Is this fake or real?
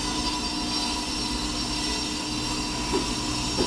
real